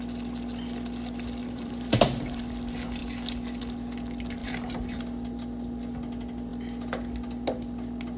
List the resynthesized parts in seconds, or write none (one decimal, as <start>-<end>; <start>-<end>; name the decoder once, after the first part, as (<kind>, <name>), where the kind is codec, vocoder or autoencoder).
1.4-2.4 (vocoder, BigVGAN v2); 4.4-5.0